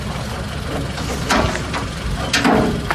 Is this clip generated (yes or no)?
no